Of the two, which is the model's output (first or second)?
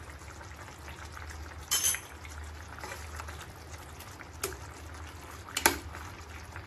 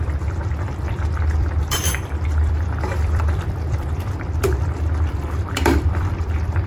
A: second